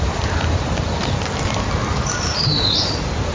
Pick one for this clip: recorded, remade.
recorded